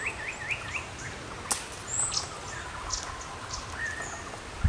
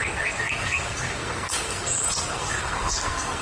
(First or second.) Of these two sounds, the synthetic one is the second